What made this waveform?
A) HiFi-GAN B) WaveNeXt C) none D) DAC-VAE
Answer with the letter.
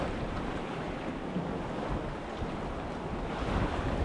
C